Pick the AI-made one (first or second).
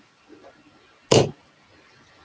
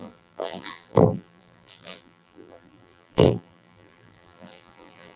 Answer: second